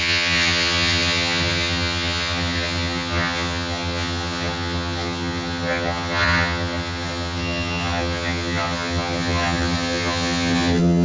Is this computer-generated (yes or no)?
yes